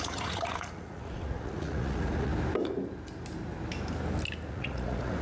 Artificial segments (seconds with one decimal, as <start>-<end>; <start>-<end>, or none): 0.0-2.3; 4.5-5.2